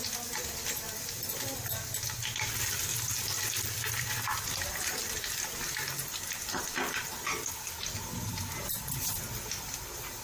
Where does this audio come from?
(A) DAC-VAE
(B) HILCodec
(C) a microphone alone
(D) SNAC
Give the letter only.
C